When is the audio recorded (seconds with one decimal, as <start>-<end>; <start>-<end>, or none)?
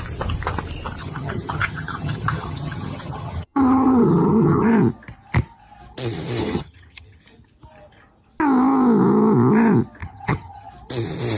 0.0-1.0; 4.7-6.4; 7.2-10.0; 10.7-11.4